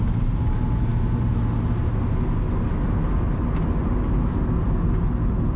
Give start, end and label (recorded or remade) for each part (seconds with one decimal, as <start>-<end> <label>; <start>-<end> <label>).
0.0-5.6 recorded